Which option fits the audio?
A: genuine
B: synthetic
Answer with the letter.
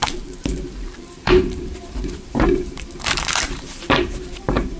B